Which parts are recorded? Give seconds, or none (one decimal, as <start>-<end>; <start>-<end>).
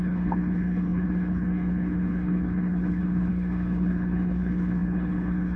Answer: none